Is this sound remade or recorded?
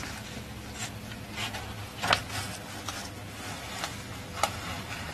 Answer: recorded